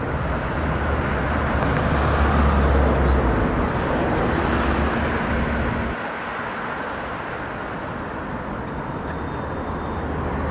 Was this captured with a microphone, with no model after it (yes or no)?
yes